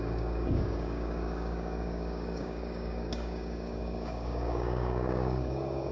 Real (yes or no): no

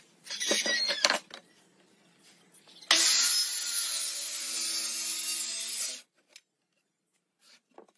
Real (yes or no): yes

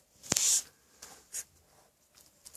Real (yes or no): yes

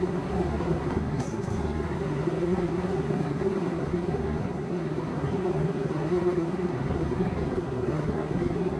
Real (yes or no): no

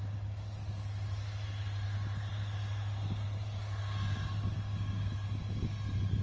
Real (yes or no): yes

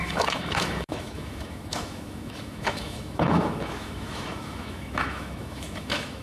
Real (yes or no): no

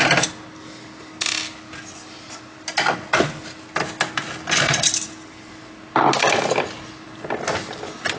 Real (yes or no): yes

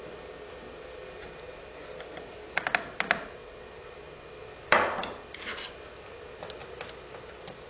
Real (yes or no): yes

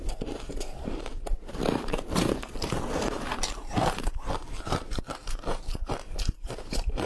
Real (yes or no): no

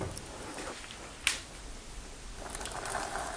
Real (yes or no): yes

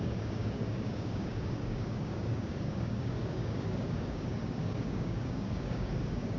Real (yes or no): no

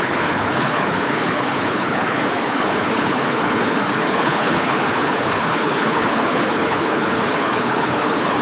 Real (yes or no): no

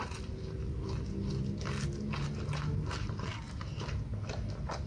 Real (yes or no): yes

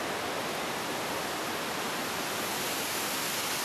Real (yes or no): yes